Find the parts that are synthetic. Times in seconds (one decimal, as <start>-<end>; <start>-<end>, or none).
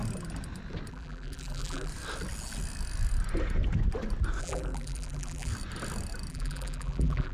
0.9-1.9; 4.4-5.5; 6.3-7.3